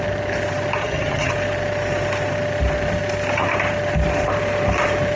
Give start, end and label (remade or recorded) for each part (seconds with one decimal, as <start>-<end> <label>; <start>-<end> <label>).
0.0-0.8 recorded; 0.8-1.3 remade; 1.3-5.2 recorded